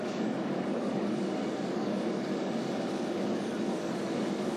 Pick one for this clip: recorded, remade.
remade